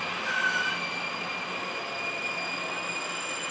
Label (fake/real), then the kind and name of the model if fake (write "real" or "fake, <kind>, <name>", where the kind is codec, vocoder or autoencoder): real